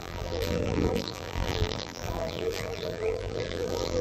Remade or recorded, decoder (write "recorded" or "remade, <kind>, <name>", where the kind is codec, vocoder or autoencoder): remade, vocoder, BigVGAN v2